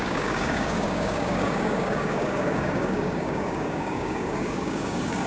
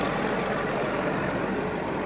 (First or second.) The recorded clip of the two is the second